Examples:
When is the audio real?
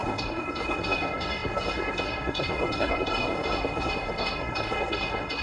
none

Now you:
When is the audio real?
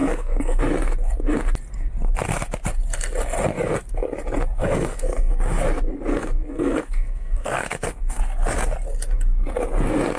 0.6-4.6; 5.3-6.1; 8.2-10.2